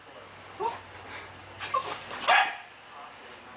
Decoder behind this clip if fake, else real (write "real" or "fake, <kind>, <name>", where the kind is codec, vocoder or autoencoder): real